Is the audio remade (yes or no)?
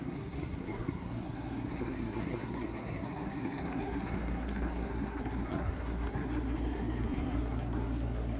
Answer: yes